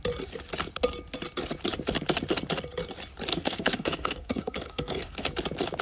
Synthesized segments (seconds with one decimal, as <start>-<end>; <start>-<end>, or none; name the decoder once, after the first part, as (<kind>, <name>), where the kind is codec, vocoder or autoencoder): 3.3-5.3 (codec, SNAC)